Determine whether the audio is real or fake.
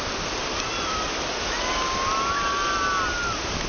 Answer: real